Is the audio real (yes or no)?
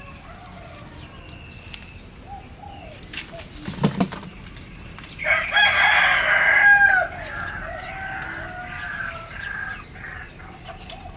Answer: yes